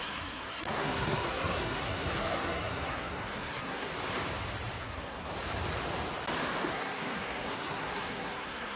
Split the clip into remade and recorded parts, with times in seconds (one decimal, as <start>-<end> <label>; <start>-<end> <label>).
0.0-3.9 remade; 3.9-4.8 recorded; 4.8-5.3 remade; 5.3-6.7 recorded; 6.7-8.8 remade